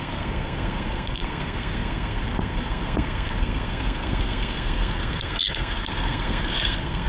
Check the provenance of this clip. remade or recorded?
remade